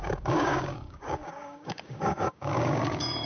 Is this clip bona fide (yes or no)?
no